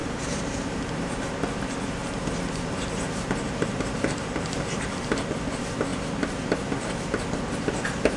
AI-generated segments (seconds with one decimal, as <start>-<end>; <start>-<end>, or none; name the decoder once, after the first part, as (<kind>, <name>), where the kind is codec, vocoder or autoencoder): 0.0-1.4 (vocoder, BigVGAN v2); 2.0-5.0